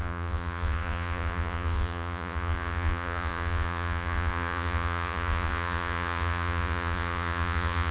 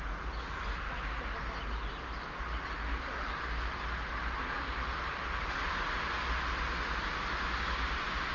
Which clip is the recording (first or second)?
second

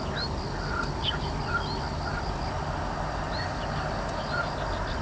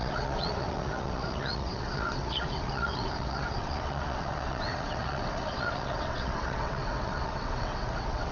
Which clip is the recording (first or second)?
first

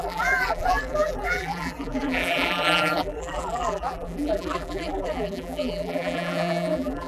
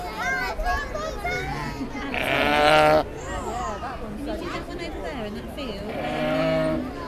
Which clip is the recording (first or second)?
second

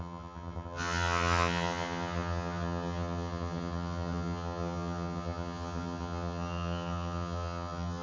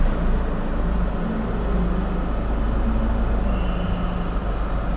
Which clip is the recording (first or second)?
second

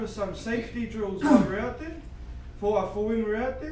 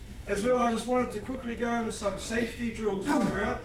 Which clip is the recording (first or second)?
first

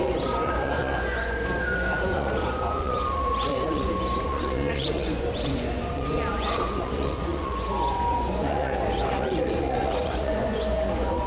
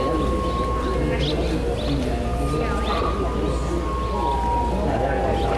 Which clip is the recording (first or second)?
second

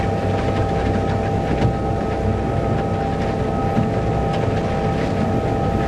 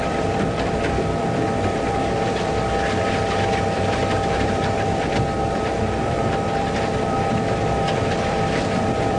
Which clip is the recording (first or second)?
first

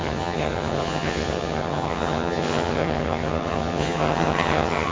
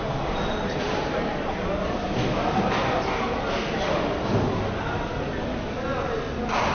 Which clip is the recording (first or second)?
second